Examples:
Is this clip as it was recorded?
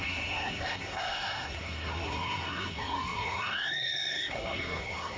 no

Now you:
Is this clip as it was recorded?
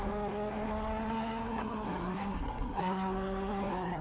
no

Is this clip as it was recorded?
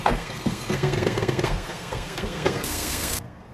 no